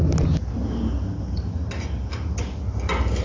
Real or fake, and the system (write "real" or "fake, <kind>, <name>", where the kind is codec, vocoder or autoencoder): real